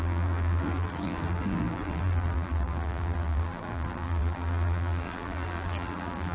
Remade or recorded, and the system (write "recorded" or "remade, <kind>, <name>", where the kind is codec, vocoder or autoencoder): remade, vocoder, BigVGAN v2